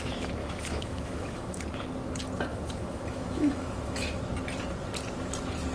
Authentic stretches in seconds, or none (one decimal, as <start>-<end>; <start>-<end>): 0.0-0.4; 1.6-2.5; 4.2-5.7